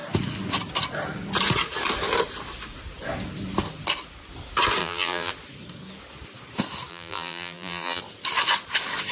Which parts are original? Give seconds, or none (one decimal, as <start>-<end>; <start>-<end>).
0.0-4.8; 5.3-6.9; 8.0-9.1